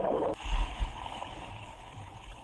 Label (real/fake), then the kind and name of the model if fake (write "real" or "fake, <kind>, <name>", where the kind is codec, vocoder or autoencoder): fake, codec, HILCodec